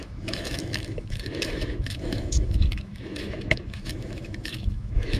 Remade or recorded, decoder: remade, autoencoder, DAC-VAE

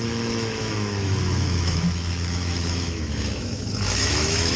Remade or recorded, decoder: remade, autoencoder, DAC-VAE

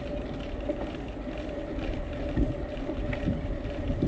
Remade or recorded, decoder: recorded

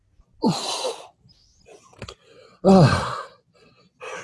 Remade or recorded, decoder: recorded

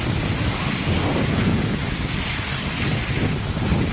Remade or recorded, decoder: recorded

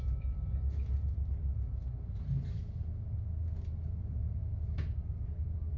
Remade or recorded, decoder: recorded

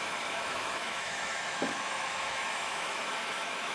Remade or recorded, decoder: remade, autoencoder, DAC-VAE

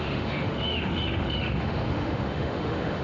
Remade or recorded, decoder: remade, autoencoder, DAC-VAE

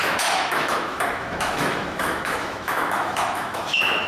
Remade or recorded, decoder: remade, autoencoder, DAC-VAE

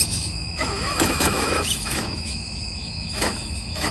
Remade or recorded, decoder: remade, autoencoder, DAC-VAE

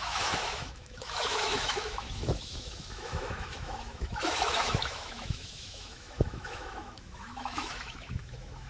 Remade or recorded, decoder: remade, autoencoder, DAC-VAE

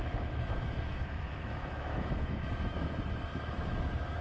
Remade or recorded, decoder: remade, autoencoder, DAC-VAE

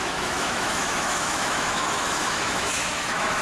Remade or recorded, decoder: remade, autoencoder, DAC-VAE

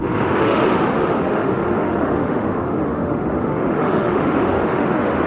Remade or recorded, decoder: remade, autoencoder, DAC-VAE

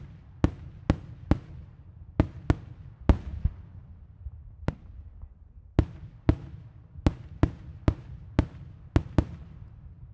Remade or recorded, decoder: recorded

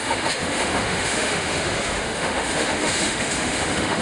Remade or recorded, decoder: remade, autoencoder, DAC-VAE